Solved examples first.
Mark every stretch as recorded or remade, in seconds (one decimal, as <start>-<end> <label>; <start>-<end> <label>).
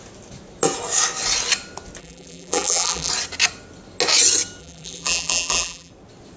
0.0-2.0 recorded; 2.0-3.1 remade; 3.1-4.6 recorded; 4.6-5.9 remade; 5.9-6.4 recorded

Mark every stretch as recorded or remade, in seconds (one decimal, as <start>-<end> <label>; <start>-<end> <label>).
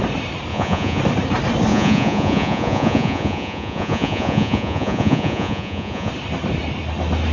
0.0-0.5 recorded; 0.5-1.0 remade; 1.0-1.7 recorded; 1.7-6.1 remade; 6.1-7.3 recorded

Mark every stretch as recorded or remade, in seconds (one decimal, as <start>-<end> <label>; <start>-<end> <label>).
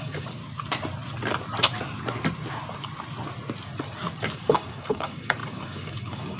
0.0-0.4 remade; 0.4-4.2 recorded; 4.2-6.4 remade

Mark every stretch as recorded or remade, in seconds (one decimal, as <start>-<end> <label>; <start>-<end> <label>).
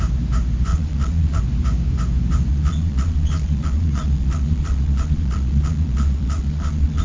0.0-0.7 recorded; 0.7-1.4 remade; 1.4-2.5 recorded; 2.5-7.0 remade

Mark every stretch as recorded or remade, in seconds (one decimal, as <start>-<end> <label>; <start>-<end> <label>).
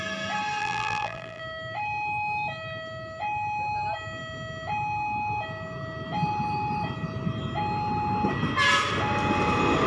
0.0-0.6 recorded; 0.6-1.4 remade; 1.4-9.9 recorded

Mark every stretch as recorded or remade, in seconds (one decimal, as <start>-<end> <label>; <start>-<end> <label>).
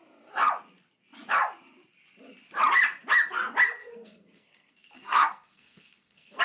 0.0-3.8 recorded; 3.8-6.4 remade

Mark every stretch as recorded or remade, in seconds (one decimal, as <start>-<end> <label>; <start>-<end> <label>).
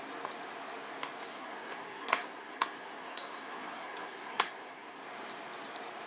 0.0-1.3 recorded; 1.3-5.0 remade; 5.0-6.1 recorded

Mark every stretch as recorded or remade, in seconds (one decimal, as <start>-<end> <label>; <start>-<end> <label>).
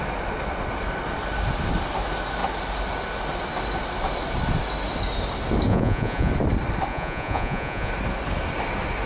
0.0-5.7 recorded; 5.7-6.3 remade; 6.3-6.9 recorded; 6.9-7.9 remade; 7.9-9.1 recorded